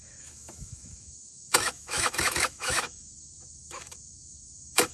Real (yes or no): no